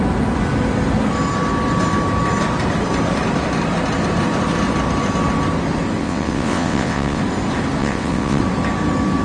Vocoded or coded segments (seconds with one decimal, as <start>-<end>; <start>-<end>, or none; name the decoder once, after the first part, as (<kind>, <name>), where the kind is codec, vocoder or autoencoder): 6.0-7.2 (vocoder, WaveNeXt); 7.8-8.4